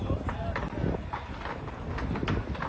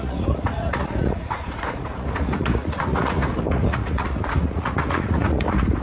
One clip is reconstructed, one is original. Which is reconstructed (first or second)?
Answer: second